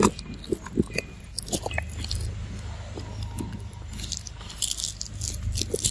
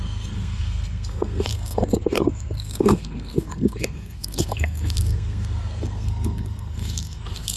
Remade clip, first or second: second